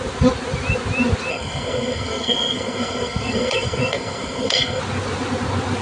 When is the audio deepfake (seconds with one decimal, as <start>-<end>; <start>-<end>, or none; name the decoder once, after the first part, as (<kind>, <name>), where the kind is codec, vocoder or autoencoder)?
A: 1.3-4.8 (codec, SNAC)